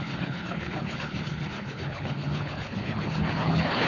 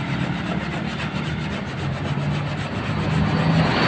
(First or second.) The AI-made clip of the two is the first